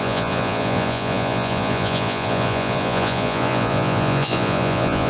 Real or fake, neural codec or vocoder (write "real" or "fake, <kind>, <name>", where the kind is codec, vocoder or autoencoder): fake, vocoder, Vocos